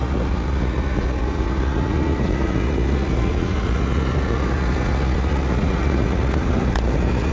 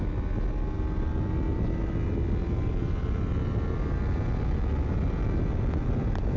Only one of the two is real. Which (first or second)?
second